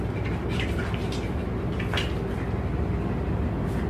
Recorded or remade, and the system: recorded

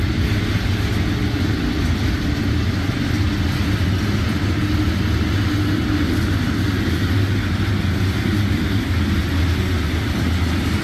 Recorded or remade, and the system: recorded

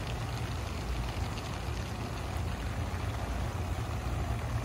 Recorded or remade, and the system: recorded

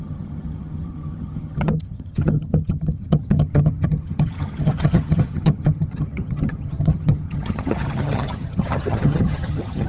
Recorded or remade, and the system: remade, vocoder, HiFi-GAN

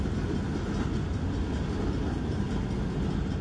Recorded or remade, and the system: recorded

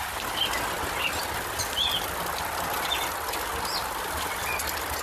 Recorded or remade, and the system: recorded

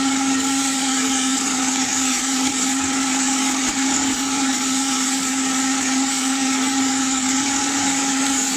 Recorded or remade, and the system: remade, codec, DAC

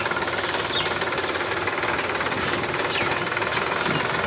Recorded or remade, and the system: recorded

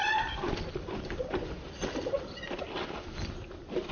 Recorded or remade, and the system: remade, vocoder, BigVGAN v2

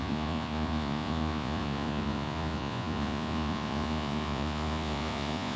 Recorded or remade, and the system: remade, vocoder, Vocos